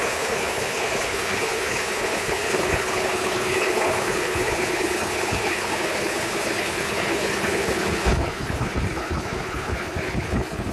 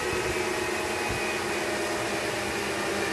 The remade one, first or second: first